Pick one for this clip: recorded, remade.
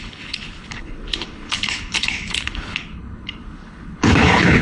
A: remade